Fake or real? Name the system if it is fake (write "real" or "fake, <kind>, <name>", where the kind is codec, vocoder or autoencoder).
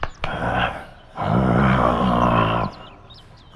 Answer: real